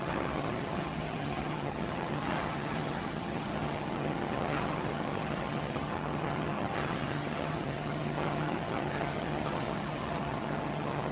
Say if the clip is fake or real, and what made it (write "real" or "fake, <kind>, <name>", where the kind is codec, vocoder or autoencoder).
fake, vocoder, HiFi-GAN